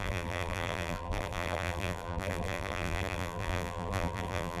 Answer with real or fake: fake